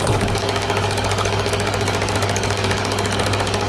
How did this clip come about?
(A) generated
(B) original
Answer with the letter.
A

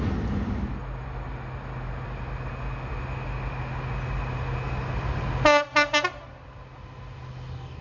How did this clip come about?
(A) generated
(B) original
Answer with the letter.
B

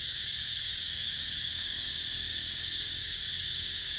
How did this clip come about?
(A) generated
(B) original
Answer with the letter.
A